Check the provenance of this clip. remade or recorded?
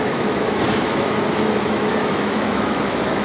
remade